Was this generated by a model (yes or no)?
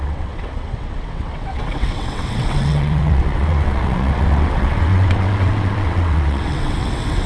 yes